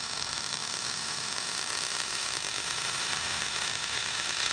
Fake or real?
fake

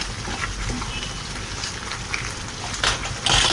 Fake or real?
real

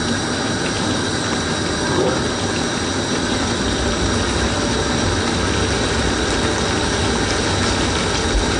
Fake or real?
real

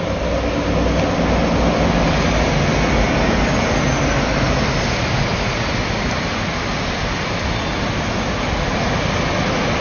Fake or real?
real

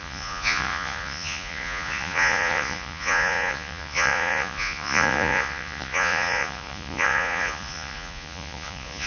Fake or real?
fake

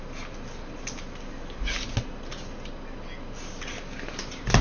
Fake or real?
real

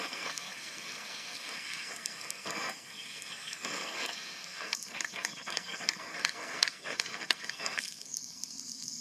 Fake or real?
fake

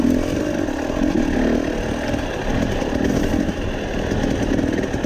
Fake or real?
real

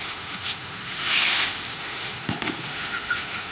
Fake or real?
fake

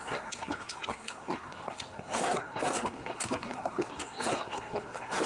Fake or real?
fake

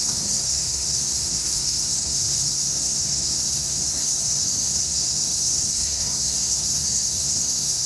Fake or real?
fake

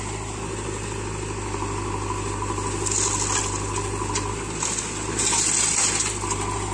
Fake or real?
real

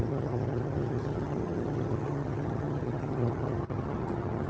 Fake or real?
fake